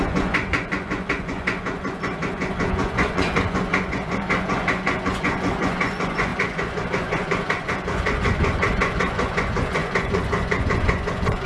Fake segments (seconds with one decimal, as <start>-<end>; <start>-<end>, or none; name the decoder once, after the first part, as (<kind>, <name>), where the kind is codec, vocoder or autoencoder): 0.0-11.5 (vocoder, Vocos)